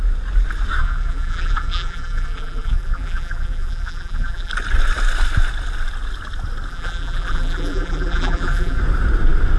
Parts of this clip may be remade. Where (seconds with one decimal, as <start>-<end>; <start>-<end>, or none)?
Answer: 0.8-4.5; 6.7-8.8